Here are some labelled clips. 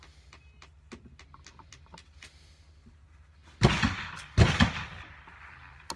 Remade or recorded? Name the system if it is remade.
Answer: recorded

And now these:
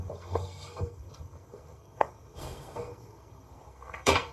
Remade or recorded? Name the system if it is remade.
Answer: remade, codec, SNAC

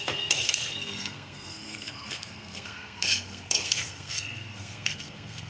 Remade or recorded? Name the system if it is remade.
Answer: remade, codec, SNAC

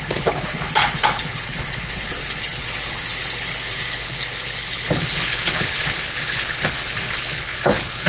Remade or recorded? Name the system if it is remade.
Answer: remade, codec, HILCodec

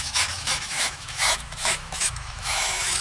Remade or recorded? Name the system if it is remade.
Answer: remade, autoencoder, DAC-VAE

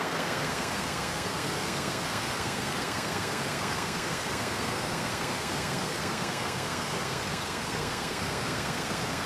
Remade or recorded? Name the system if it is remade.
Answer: remade, codec, SNAC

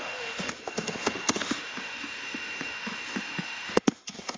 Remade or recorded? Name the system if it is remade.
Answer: remade, autoencoder, DAC-VAE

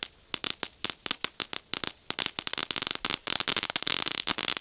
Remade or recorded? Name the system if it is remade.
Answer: recorded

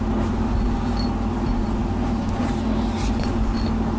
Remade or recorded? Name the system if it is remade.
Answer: recorded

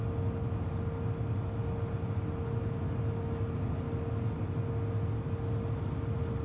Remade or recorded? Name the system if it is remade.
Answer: recorded